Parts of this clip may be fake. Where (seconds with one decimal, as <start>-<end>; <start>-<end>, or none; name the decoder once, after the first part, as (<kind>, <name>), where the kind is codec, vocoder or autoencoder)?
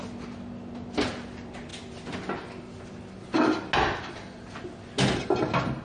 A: none